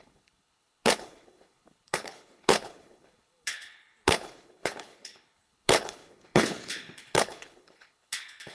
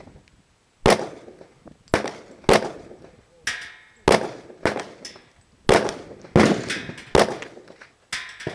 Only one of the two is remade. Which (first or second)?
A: first